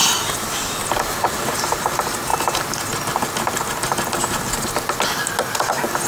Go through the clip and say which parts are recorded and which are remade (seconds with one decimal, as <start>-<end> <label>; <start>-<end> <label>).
0.0-6.1 recorded